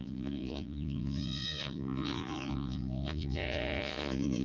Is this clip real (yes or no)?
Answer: no